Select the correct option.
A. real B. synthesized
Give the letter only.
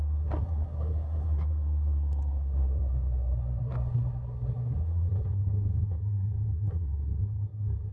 B